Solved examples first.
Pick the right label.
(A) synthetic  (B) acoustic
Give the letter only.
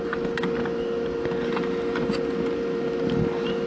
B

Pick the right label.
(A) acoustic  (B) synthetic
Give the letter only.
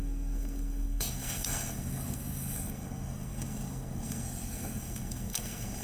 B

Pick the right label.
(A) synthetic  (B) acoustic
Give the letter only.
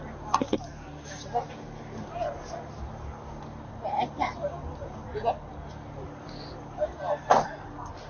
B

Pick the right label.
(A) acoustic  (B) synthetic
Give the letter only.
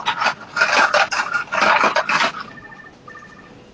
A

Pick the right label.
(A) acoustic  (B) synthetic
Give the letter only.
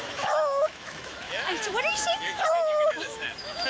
B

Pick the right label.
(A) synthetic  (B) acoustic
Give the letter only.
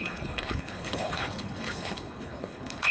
A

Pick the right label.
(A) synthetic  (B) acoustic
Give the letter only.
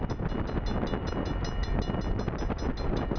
B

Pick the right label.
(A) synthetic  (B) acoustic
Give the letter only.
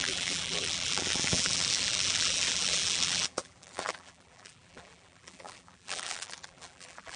A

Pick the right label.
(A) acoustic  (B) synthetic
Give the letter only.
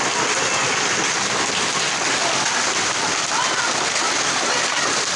A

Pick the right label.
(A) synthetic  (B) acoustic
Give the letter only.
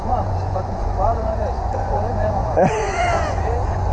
A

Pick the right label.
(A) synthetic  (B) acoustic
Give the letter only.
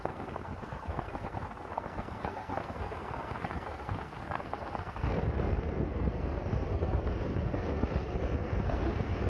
A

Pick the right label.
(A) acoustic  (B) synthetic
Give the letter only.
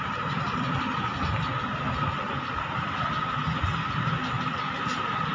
A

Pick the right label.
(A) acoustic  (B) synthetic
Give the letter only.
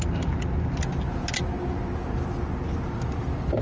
A